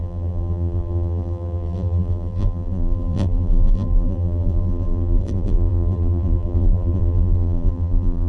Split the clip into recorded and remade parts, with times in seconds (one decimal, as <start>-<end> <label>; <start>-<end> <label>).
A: 0.0-8.3 remade